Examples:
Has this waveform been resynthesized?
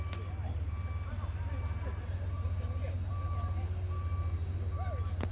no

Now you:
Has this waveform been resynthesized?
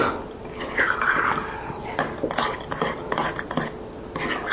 no